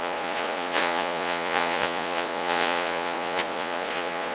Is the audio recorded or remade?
remade